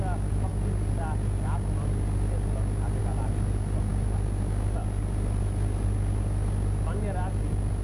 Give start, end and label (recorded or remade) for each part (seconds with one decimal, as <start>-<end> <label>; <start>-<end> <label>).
0.0-7.8 recorded